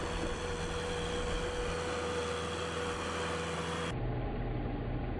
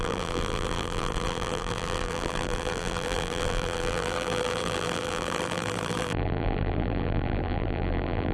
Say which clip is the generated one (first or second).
second